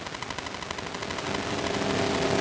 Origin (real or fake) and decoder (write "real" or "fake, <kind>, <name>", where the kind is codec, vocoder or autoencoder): real